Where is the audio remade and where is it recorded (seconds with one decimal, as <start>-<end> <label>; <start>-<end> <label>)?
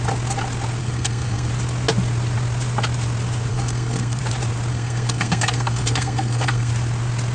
0.0-0.8 recorded; 0.8-1.5 remade; 1.5-3.5 recorded; 3.5-4.2 remade; 4.2-4.7 recorded; 4.7-6.7 remade; 6.7-7.3 recorded